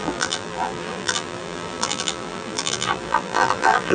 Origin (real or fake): fake